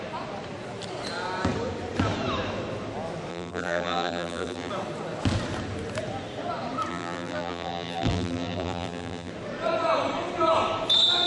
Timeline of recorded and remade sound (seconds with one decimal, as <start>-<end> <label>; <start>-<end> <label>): 0.0-3.3 recorded; 3.3-4.7 remade; 4.7-6.9 recorded; 6.9-9.3 remade; 9.3-11.3 recorded